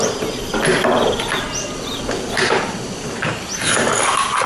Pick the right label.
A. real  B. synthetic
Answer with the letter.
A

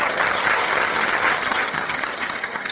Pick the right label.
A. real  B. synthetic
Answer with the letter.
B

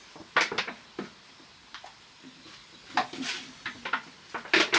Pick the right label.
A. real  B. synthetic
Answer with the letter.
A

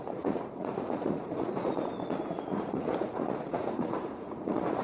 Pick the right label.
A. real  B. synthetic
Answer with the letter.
B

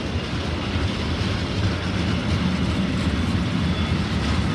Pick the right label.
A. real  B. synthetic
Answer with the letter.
A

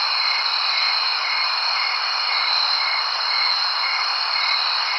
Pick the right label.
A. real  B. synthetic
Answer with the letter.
A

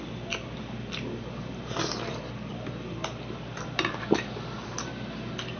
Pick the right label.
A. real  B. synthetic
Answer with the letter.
A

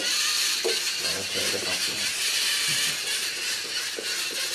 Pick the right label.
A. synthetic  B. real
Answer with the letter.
B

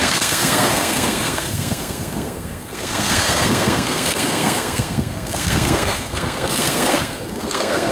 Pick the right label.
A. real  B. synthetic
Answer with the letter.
B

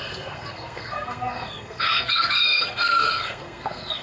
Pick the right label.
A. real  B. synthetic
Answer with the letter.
B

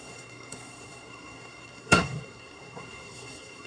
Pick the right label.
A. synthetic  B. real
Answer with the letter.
A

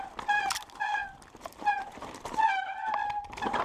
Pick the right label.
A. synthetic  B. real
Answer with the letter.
B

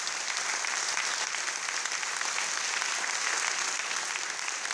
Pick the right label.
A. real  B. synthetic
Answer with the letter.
A